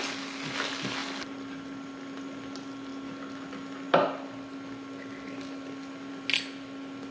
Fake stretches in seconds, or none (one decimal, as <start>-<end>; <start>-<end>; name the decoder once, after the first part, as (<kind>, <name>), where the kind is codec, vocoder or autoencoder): none